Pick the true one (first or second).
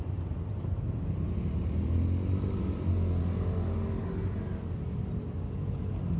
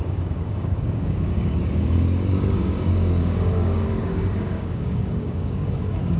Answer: first